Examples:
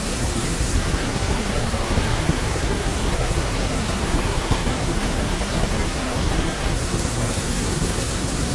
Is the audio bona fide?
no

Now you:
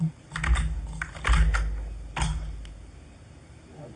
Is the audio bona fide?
yes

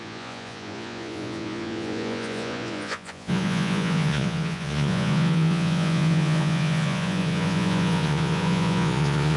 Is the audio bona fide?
no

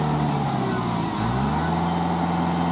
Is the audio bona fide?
yes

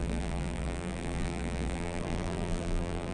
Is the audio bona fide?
no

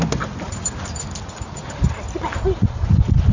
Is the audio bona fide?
yes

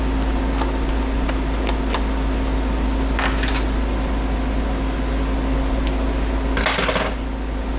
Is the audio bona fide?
yes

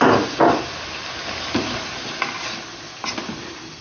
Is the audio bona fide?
yes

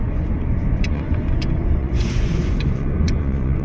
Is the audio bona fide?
no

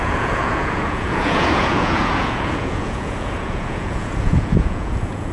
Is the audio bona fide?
no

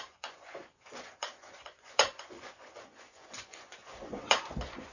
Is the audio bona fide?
no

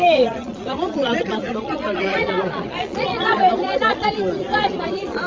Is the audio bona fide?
no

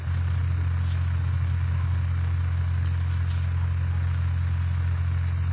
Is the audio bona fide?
yes